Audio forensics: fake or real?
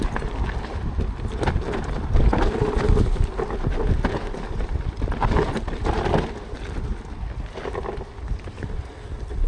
real